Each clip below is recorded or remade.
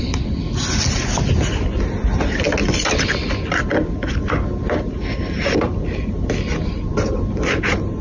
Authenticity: recorded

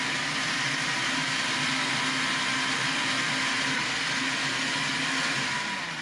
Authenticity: recorded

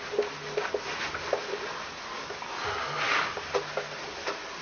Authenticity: recorded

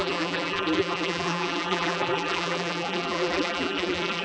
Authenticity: remade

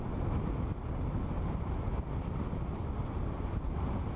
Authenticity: recorded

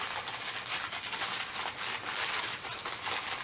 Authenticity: recorded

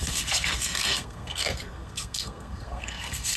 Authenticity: remade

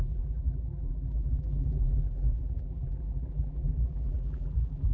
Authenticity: remade